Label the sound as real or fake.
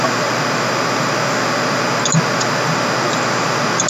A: real